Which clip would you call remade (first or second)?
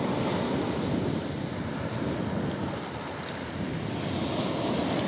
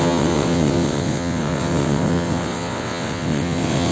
second